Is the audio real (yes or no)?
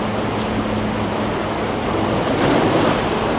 yes